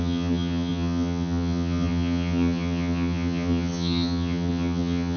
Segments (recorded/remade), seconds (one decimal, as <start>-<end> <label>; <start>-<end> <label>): 0.0-5.2 remade